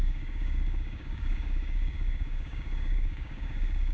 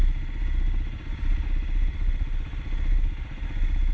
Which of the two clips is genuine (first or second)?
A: second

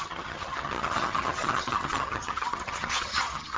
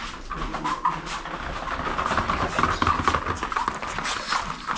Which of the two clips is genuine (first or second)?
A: second